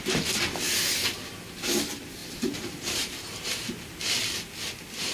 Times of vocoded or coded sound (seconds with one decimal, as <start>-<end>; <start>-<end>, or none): 2.2-3.9